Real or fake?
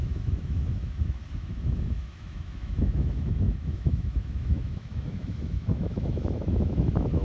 fake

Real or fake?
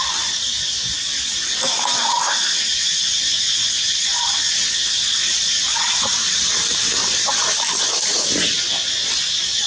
real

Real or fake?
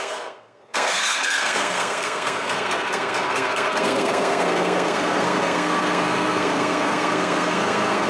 fake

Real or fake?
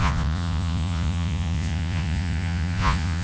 fake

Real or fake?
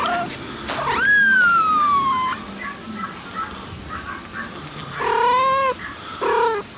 real